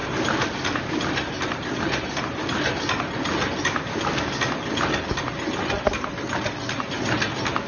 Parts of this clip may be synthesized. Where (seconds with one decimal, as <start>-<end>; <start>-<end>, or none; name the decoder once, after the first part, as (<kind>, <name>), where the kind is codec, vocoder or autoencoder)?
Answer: none